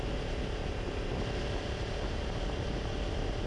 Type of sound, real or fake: real